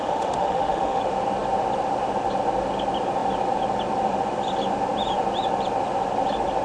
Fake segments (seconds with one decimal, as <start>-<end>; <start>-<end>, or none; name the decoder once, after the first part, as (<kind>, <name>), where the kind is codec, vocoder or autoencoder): 0.0-1.0 (autoencoder, DAC-VAE)